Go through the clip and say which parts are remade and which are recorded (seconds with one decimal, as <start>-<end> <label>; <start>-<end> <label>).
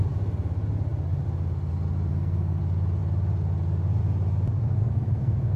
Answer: 0.0-2.1 recorded; 2.1-2.6 remade; 2.6-4.8 recorded; 4.8-5.6 remade